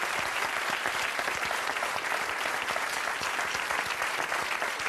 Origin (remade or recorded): recorded